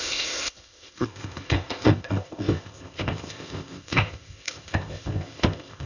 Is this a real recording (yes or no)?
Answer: no